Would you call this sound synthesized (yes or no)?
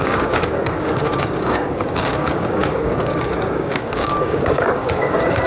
yes